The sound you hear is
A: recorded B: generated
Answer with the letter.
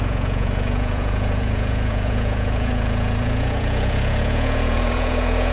B